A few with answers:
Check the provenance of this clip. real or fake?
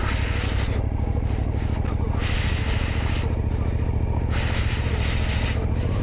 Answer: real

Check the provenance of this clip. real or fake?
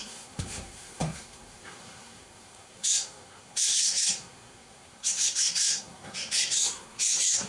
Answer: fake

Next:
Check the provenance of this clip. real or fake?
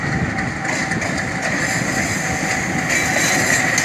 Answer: real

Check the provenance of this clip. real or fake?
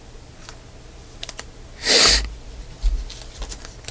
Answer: real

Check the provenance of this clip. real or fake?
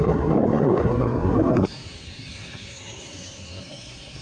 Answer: fake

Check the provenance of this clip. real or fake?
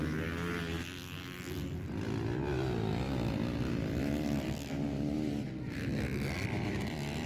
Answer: real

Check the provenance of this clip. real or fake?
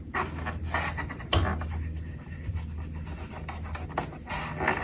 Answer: real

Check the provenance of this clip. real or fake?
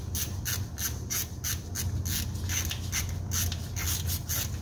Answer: real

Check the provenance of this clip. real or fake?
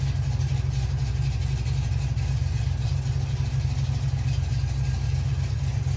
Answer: real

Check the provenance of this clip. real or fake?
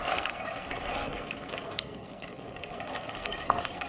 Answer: fake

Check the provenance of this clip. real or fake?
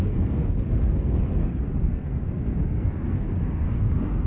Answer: fake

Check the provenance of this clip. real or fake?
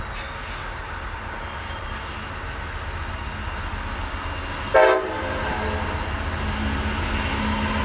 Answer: real